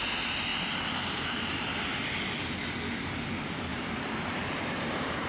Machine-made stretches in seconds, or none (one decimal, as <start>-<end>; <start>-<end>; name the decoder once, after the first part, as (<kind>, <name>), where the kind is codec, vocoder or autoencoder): 0.5-2.1 (vocoder, BigVGAN v2); 3.7-5.3